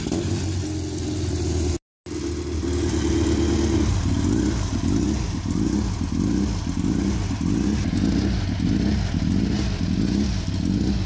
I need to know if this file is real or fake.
real